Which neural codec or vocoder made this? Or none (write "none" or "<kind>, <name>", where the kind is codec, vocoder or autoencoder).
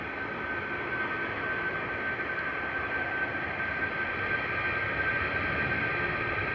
none